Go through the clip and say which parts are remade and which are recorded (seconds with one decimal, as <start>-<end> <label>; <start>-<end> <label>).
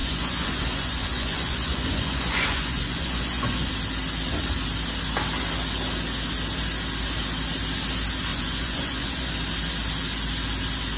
0.0-3.7 remade; 3.7-8.3 recorded; 8.3-9.3 remade; 9.3-11.0 recorded